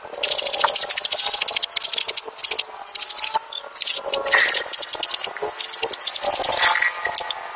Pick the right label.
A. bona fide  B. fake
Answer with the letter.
A